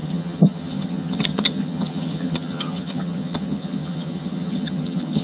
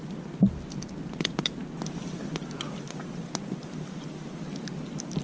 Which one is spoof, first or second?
first